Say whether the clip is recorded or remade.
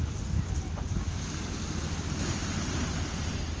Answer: recorded